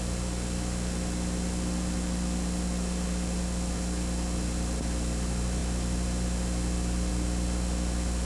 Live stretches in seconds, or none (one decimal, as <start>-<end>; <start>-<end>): 0.0-8.2